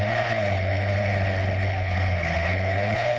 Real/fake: fake